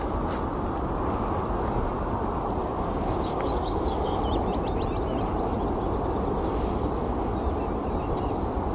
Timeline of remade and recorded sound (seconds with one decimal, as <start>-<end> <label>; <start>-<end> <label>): 0.0-2.6 recorded; 2.6-4.2 remade; 4.2-8.7 recorded